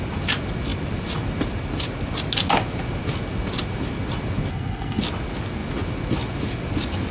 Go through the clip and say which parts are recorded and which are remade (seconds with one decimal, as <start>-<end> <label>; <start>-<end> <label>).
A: 0.0-4.5 recorded; 4.5-5.0 remade; 5.0-7.1 recorded